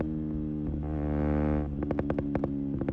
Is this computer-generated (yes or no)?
no